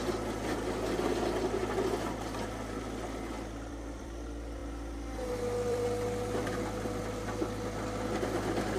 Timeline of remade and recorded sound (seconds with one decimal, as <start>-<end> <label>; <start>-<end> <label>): 0.0-4.6 remade; 4.6-5.3 recorded; 5.3-8.8 remade